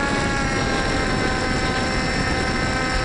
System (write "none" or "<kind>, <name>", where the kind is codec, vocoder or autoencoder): none